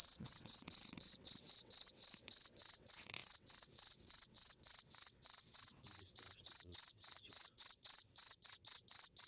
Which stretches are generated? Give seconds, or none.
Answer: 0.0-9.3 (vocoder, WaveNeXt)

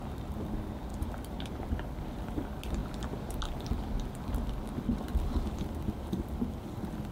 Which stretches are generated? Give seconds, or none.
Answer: none